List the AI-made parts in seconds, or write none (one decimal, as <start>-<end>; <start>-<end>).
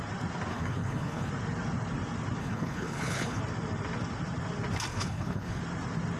0.5-1.3; 2.4-3.4; 4.9-5.6